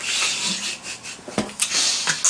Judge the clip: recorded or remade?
recorded